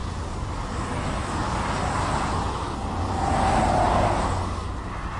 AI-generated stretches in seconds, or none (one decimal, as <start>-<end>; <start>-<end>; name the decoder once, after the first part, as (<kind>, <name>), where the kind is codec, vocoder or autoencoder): none